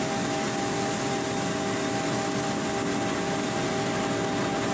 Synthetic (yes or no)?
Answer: no